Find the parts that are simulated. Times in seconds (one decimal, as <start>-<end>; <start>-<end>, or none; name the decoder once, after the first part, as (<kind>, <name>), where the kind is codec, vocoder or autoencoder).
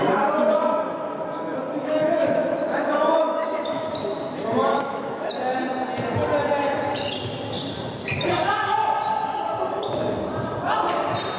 1.8-3.9 (autoencoder, DAC-VAE); 4.7-5.3